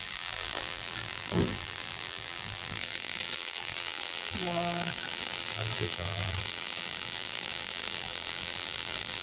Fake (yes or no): yes